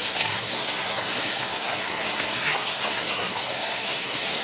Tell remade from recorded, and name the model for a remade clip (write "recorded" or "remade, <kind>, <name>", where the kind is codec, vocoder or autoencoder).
remade, codec, SNAC